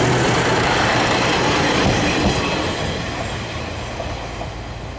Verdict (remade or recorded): recorded